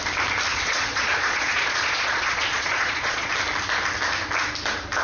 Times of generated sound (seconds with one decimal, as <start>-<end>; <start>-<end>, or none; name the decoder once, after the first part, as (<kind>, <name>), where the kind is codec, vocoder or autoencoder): 0.5-3.3 (vocoder, Vocos)